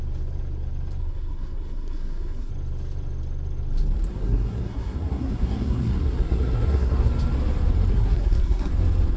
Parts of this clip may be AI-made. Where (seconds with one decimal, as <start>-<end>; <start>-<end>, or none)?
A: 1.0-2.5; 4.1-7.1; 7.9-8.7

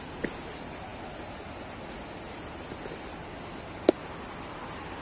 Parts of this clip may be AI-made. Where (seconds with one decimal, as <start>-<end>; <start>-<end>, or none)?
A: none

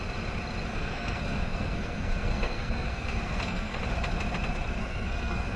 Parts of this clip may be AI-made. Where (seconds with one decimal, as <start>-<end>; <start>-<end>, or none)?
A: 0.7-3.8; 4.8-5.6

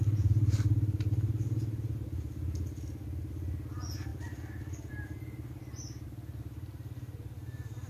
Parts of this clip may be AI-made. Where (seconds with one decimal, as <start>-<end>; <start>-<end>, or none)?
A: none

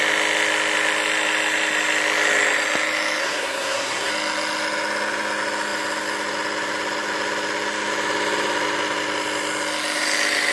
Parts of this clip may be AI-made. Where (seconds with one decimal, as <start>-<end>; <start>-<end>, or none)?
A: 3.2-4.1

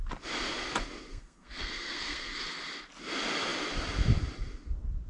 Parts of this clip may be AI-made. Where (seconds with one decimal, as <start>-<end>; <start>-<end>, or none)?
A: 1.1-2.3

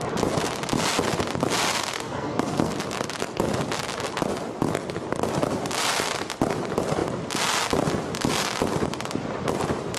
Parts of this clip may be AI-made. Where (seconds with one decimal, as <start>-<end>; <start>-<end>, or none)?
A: 1.9-2.7

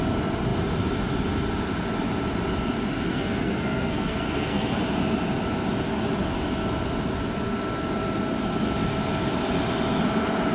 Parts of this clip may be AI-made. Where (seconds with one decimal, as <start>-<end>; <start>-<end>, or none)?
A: 3.1-4.8